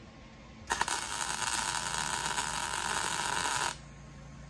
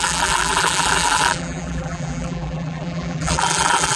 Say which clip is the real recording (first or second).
first